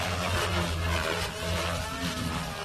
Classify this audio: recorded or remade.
recorded